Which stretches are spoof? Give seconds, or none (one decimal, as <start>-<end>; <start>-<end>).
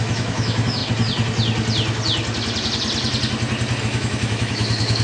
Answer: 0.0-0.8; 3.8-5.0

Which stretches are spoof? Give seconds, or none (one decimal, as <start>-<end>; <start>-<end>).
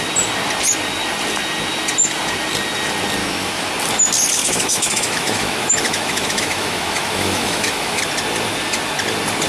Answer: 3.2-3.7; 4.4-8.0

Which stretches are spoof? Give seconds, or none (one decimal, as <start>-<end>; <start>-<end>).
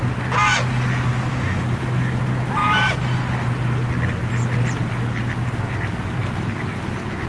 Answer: 1.3-2.2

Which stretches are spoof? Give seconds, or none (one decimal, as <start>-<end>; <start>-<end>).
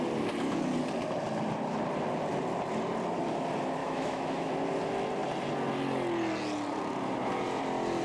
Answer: 3.8-4.5